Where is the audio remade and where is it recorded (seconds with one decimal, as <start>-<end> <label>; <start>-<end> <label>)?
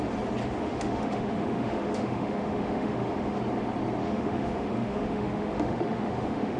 0.0-0.4 recorded; 0.4-3.4 remade; 3.4-4.0 recorded; 4.0-6.6 remade